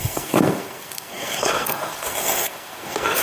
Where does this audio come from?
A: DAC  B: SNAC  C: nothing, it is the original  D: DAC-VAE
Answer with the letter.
B